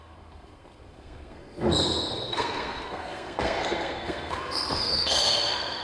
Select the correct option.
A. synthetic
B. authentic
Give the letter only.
A